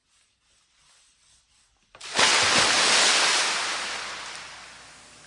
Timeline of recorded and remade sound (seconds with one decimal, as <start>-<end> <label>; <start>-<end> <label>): 0.0-5.3 recorded